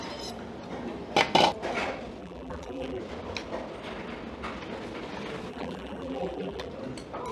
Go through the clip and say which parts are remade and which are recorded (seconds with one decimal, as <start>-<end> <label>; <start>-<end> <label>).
0.0-2.2 recorded; 2.2-3.0 remade; 3.0-5.5 recorded; 5.5-6.7 remade; 6.7-7.3 recorded